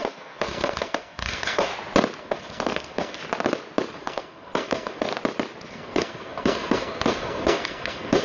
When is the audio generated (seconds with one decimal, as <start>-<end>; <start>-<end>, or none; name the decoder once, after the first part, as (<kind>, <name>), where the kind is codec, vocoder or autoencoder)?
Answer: 0.0-1.7 (codec, SNAC); 2.2-3.2; 4.0-5.1; 5.7-8.2